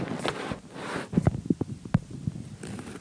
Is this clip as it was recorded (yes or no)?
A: yes